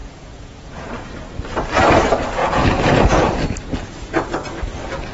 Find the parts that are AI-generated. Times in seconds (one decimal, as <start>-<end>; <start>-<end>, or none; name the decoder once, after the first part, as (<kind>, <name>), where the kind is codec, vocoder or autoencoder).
0.0-0.9 (vocoder, Vocos); 2.4-3.2